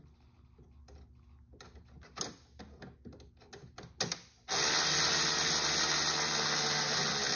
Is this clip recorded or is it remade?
recorded